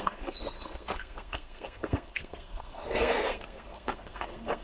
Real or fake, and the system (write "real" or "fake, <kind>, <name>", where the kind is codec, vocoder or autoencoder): fake, codec, SNAC